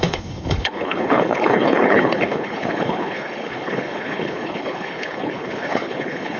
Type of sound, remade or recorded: remade